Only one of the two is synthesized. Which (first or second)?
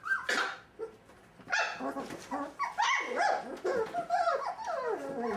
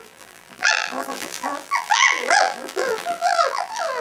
second